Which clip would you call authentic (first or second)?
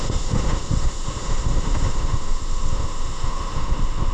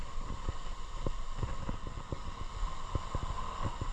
second